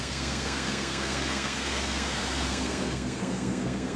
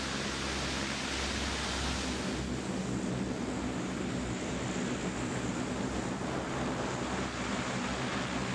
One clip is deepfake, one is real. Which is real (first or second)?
second